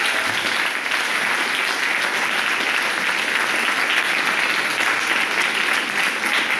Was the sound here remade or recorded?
recorded